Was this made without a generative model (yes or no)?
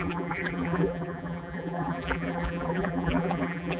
no